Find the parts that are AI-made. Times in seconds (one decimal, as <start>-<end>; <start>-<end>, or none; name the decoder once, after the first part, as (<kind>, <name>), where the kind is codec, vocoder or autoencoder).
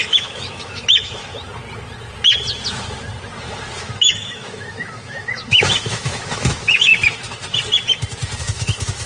0.0-1.3 (autoencoder, DAC-VAE); 3.8-6.9; 8.4-9.1